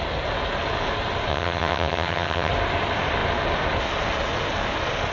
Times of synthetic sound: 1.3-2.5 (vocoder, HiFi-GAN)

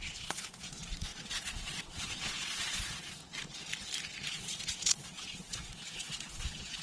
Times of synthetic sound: 0.0-3.2 (vocoder, Vocos); 4.3-6.8

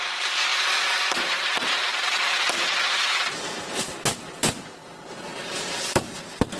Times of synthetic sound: none

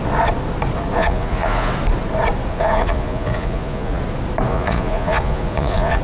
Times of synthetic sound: 1.0-1.7 (vocoder, Vocos); 2.5-4.0; 4.5-6.0

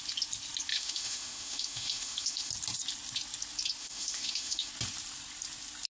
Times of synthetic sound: 0.7-2.5 (autoencoder, DAC-VAE); 3.8-4.7

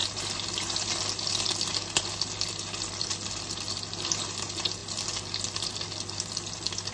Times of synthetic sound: none

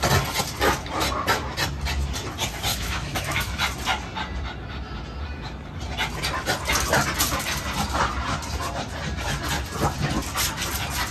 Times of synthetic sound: 2.7-3.5 (autoencoder, DAC-VAE)

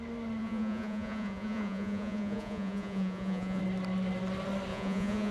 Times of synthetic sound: 0.4-3.6 (vocoder, Vocos); 4.7-5.3